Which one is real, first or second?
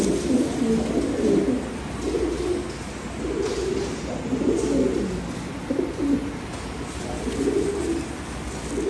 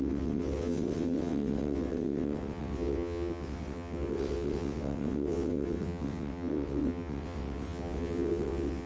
first